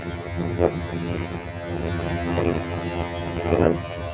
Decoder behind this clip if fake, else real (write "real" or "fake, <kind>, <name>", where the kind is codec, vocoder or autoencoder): fake, vocoder, HiFi-GAN